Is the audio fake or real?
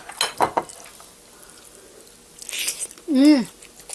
real